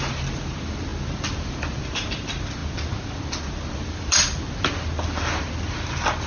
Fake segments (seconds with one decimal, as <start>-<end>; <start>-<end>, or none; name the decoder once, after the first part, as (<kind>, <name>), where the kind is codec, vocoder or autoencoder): none